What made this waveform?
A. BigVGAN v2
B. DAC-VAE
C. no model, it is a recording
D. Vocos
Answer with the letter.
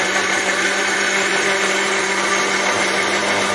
A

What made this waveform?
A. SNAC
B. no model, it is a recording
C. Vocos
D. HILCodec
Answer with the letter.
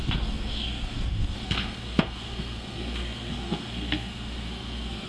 A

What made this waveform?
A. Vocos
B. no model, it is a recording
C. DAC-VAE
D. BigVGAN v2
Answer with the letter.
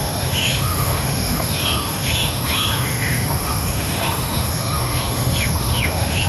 C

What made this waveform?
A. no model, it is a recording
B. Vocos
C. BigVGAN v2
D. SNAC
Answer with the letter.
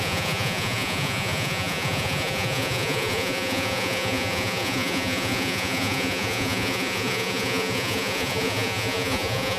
B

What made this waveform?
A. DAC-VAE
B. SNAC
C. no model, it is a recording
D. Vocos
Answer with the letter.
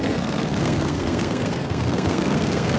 B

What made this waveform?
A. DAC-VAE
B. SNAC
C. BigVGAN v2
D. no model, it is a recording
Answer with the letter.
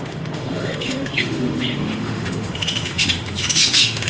A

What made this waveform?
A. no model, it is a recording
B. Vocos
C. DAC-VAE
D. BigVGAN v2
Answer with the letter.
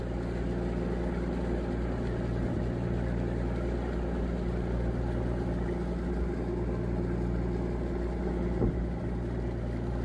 A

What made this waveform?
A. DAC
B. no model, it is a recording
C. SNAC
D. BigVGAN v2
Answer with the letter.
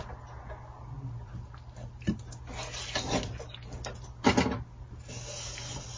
B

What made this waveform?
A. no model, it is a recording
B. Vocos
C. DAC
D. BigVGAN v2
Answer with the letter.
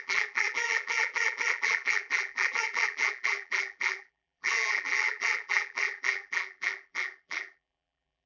D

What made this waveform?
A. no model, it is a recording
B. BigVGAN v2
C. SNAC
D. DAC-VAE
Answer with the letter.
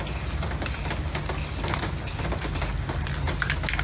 A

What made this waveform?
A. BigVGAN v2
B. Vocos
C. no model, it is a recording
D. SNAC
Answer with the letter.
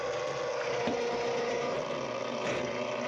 C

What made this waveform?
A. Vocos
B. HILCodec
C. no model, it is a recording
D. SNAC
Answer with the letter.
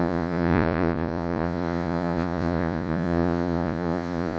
A